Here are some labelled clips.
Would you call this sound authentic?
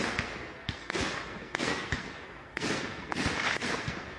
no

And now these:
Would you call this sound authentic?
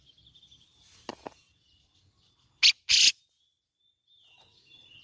yes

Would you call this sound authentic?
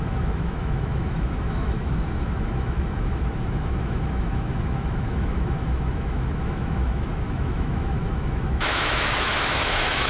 no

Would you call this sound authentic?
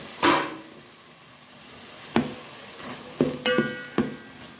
yes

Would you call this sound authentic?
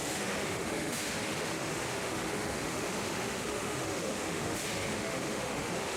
no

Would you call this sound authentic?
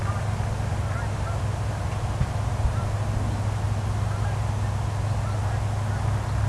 yes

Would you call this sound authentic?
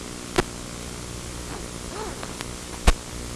yes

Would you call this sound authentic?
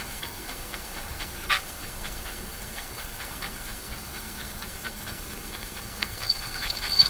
no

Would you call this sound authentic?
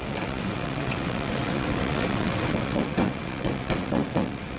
no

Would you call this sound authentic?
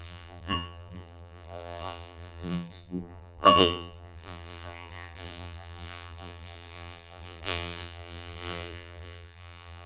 no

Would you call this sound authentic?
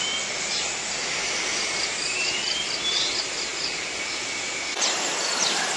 yes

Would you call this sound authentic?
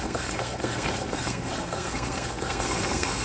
no